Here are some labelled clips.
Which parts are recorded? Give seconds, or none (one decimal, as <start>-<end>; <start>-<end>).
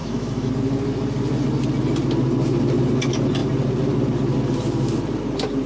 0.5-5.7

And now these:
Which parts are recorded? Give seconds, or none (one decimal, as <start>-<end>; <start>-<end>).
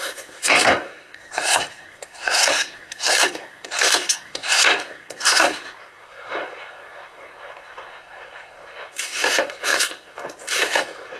none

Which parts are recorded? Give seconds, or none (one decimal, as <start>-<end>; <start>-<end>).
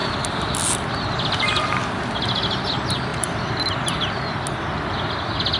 2.1-3.1; 3.7-5.6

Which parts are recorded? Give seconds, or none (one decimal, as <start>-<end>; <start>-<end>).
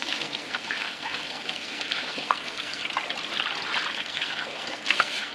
2.8-3.9